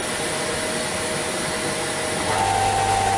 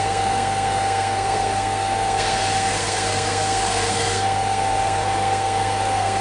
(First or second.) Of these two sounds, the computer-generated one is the second